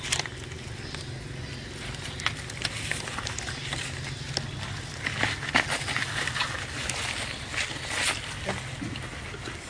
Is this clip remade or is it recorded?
recorded